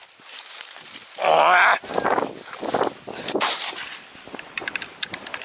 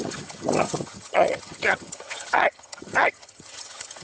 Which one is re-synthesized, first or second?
second